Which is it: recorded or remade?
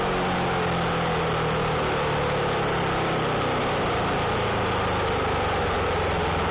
recorded